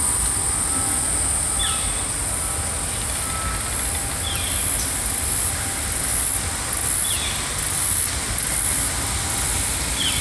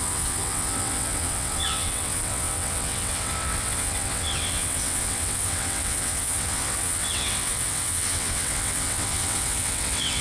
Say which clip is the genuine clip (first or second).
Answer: first